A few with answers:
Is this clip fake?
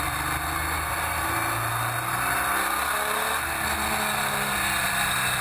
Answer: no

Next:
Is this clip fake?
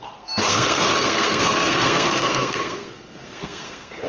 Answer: yes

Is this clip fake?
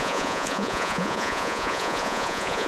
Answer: yes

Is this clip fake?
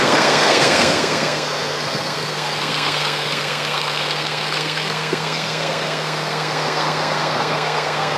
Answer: yes